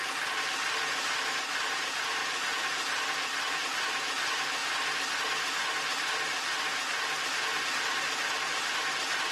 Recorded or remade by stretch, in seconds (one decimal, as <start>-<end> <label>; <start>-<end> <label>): 0.0-9.3 recorded